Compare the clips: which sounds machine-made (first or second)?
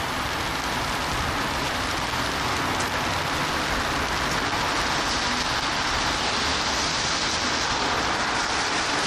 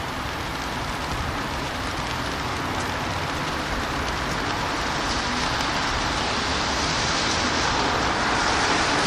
second